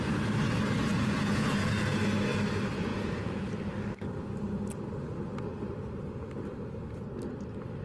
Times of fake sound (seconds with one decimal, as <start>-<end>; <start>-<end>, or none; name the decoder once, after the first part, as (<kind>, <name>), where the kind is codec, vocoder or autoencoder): 0.9-2.0 (vocoder, Vocos); 2.9-3.5